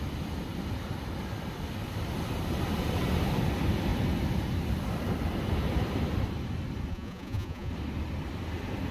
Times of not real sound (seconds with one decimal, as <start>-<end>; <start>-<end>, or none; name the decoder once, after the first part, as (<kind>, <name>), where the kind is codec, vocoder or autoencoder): 6.9-7.7 (vocoder, Vocos)